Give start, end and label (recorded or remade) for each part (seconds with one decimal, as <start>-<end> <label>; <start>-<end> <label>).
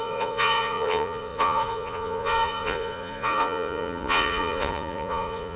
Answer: 0.0-5.6 remade